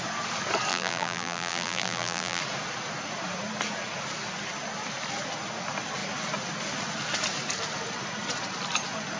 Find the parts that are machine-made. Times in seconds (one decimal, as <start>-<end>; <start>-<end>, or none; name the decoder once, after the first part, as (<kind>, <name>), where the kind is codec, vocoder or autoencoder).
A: 0.7-2.4 (vocoder, BigVGAN v2)